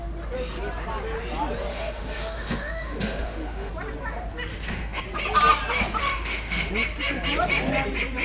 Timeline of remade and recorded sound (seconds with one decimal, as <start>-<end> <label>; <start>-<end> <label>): 0.0-1.7 recorded; 1.7-3.7 remade; 3.7-4.5 recorded; 4.5-5.0 remade; 5.0-6.0 recorded; 6.0-6.7 remade; 6.7-8.2 recorded

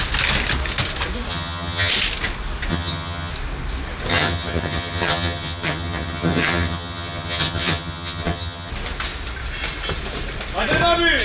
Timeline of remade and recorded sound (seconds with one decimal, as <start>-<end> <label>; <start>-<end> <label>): 0.0-1.3 recorded; 1.3-1.9 remade; 1.9-2.7 recorded; 2.7-3.3 remade; 3.3-4.1 recorded; 4.1-8.7 remade; 8.7-11.2 recorded

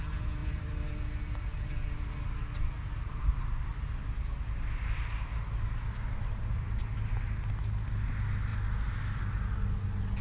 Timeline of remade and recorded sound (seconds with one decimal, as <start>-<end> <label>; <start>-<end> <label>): 0.0-0.4 recorded; 0.4-0.9 remade; 0.9-10.2 recorded

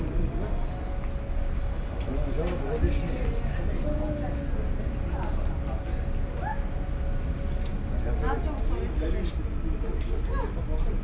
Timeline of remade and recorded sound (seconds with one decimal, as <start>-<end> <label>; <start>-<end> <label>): 0.0-11.0 recorded